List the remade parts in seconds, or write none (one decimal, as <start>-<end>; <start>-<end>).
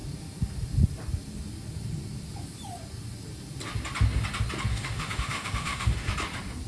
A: 4.7-6.1